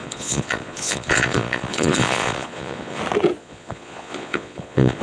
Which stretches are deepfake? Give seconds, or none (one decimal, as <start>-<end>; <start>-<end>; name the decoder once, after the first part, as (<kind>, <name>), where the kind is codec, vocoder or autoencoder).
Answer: 0.0-3.0 (vocoder, Vocos); 3.4-5.0